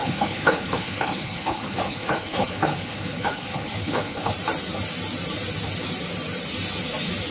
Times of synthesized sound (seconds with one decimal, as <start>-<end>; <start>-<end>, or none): 0.0-4.3